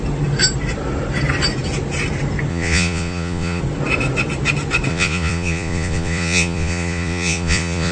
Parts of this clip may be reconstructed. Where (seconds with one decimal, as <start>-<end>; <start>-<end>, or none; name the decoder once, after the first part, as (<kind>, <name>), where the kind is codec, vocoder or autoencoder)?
2.5-3.6 (vocoder, Vocos); 4.9-7.9